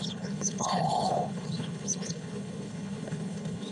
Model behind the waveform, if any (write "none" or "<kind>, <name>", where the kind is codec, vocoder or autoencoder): codec, HILCodec